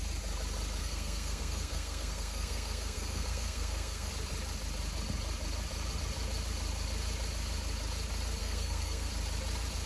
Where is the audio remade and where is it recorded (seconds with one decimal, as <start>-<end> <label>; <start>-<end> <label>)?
0.0-0.8 recorded; 0.8-4.1 remade; 4.1-8.4 recorded; 8.4-9.1 remade; 9.1-9.9 recorded